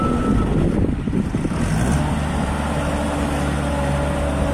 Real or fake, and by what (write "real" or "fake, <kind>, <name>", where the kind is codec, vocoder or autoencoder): real